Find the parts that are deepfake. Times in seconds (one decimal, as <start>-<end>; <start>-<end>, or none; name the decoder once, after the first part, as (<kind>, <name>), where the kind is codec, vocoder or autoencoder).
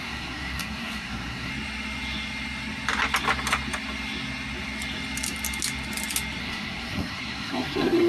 0.0-1.5 (codec, SNAC); 6.4-8.1